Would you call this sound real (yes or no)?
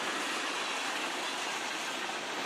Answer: yes